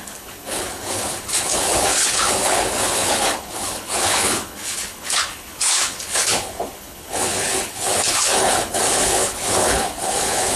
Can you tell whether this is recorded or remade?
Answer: remade